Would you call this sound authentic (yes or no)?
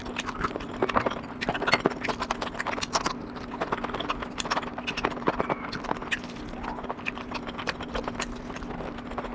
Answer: yes